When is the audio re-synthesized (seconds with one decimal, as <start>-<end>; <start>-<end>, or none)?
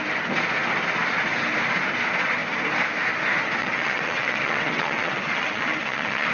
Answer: 3.6-6.3